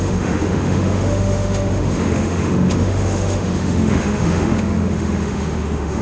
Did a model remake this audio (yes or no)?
yes